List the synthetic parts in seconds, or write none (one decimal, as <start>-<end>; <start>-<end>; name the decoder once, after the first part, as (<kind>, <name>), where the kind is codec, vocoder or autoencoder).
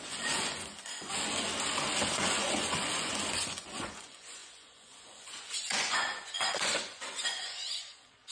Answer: 0.0-1.5 (vocoder, Vocos); 2.1-8.3